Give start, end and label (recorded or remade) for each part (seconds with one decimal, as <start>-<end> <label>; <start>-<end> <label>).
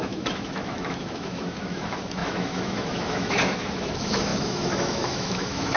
0.0-5.8 remade